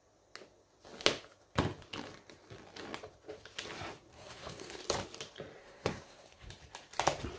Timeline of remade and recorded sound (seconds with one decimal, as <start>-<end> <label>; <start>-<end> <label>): 0.0-4.1 recorded; 4.1-4.8 remade; 4.8-5.6 recorded; 5.6-6.5 remade; 6.5-7.4 recorded